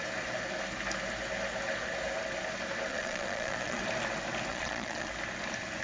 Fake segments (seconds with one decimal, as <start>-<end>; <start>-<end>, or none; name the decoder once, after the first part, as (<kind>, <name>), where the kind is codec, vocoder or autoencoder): 2.9-3.8 (vocoder, Vocos); 4.5-5.1